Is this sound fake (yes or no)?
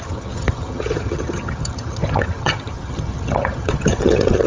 yes